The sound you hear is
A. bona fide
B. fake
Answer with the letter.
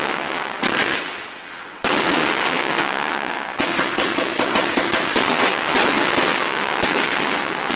B